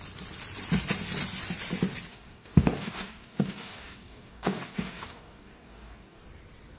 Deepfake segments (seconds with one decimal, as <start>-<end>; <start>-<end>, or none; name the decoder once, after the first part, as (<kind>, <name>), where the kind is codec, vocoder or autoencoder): 2.1-6.2 (codec, DAC)